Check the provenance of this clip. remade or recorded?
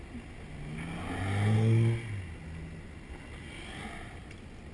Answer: recorded